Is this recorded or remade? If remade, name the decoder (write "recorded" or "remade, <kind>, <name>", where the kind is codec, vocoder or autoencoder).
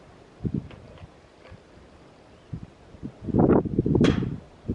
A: remade, vocoder, BigVGAN v2